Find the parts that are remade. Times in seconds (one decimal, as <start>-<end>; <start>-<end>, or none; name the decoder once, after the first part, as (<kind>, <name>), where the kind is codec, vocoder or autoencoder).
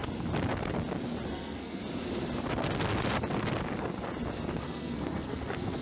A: 1.3-1.8 (codec, SNAC); 4.6-5.8